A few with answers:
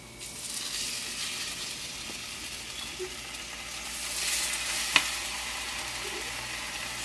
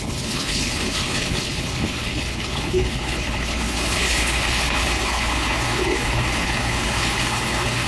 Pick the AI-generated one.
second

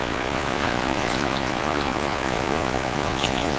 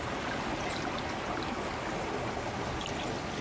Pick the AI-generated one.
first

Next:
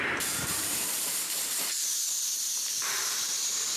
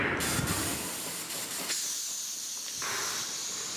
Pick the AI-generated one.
first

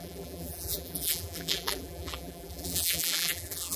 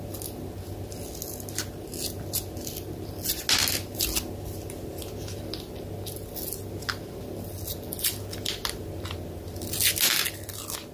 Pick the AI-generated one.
first